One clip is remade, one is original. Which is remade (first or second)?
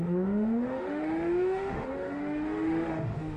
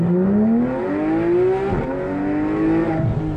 first